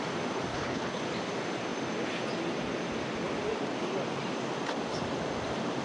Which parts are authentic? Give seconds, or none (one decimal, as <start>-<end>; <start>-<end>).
0.0-0.5; 1.0-5.8

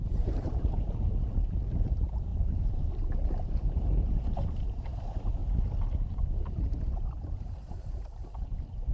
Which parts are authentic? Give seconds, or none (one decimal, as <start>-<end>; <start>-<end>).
5.4-6.5

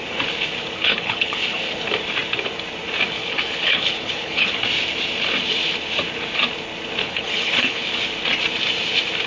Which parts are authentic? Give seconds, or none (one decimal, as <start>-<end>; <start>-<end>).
0.0-0.8; 1.4-3.2; 4.5-7.0; 7.8-9.3

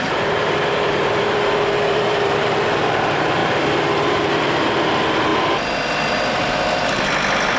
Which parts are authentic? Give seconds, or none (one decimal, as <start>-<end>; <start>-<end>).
5.3-7.6

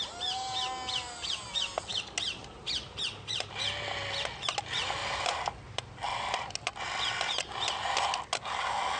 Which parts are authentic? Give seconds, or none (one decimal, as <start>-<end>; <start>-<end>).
0.0-5.0; 5.6-9.0

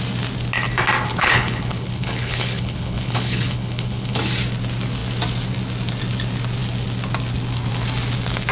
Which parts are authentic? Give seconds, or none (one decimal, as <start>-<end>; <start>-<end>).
0.0-1.1; 4.3-8.5